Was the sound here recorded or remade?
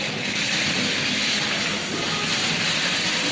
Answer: recorded